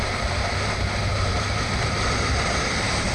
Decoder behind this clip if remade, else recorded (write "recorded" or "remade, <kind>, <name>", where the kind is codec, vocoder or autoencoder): remade, vocoder, BigVGAN v2